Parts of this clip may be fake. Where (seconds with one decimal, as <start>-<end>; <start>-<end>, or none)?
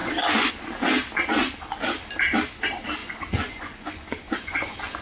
0.0-0.5; 3.0-5.0